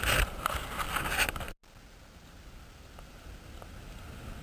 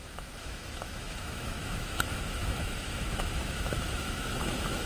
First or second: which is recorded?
first